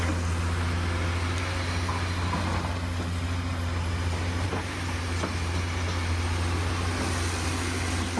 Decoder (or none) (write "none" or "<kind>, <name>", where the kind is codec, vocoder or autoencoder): none